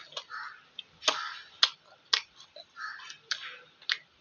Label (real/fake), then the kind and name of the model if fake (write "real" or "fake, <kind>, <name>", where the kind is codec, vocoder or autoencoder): real